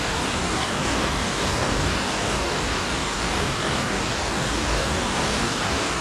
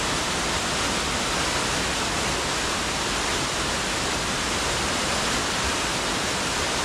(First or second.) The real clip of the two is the second